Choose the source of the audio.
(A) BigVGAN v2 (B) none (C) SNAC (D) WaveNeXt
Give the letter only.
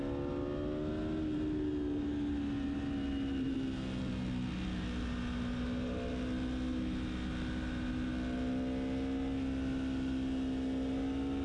B